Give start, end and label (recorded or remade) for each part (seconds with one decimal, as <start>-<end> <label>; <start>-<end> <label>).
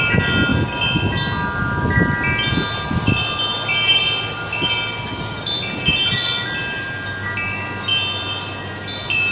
0.0-9.3 recorded